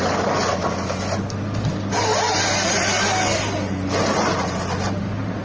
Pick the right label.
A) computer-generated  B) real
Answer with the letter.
B